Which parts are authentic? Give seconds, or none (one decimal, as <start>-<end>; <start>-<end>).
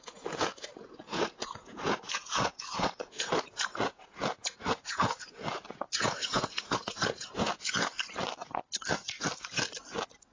7.9-10.3